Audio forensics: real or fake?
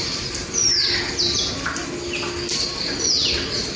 real